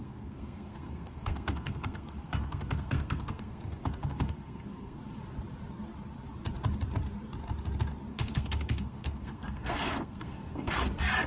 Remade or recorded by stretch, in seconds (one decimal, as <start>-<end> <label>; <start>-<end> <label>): 0.0-5.0 remade; 5.0-8.1 recorded; 8.1-10.8 remade; 10.8-11.3 recorded